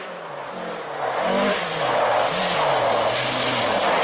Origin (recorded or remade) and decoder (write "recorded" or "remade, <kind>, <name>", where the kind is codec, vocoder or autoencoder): recorded